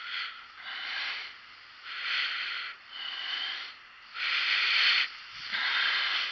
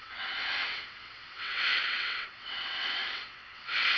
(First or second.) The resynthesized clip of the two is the second